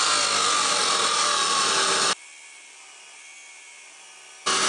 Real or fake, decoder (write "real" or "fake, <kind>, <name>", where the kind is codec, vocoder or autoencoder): real